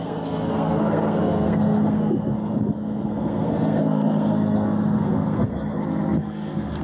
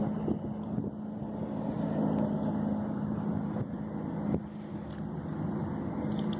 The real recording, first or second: second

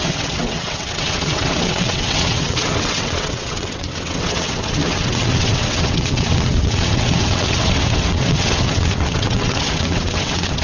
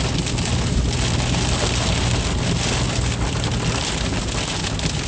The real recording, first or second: second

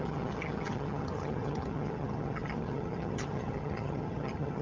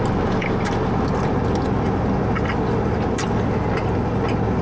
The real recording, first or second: second